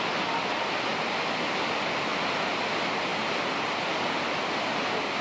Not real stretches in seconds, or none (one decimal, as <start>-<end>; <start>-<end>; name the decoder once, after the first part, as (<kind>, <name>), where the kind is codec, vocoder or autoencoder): none